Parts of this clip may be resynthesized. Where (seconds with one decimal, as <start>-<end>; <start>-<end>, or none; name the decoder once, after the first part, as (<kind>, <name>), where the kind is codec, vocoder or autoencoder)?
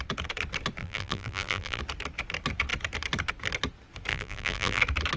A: 0.8-1.8 (vocoder, BigVGAN v2); 4.1-4.8